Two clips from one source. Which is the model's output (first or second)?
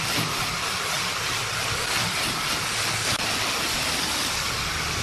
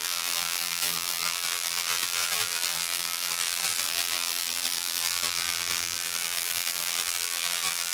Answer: second